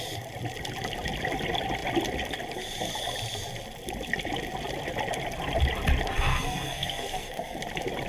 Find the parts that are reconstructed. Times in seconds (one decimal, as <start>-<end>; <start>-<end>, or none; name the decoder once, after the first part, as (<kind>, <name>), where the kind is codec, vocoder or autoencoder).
6.1-7.6 (codec, SNAC)